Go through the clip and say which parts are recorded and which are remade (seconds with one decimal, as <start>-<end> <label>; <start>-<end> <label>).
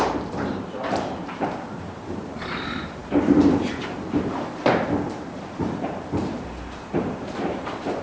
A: 0.0-8.0 remade